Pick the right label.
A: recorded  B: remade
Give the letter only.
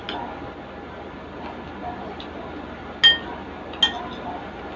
A